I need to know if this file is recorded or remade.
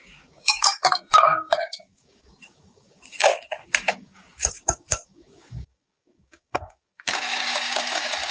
remade